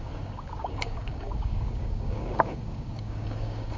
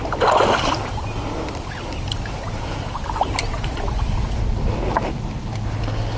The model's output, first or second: first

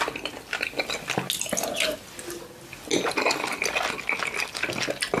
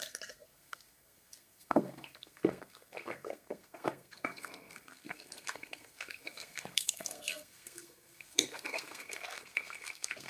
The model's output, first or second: second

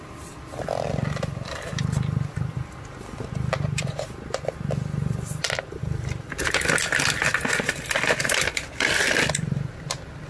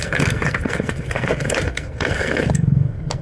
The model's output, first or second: second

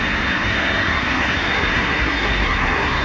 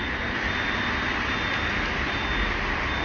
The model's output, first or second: first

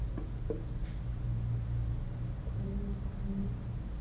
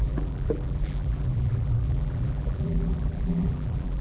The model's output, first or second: second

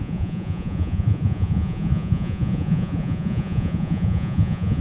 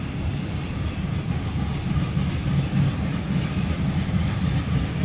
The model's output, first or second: first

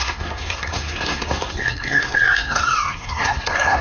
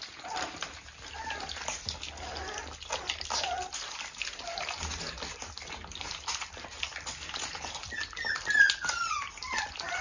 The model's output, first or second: first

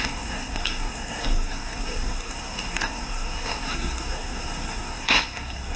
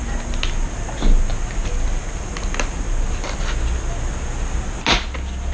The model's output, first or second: first